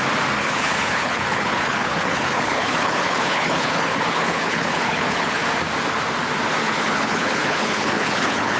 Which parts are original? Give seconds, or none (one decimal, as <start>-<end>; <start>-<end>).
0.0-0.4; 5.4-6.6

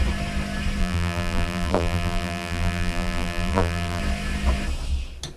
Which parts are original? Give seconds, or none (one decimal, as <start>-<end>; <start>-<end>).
0.0-0.8; 4.0-5.4

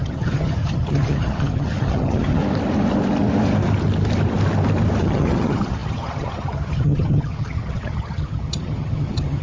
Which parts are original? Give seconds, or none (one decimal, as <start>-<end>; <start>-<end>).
2.4-5.0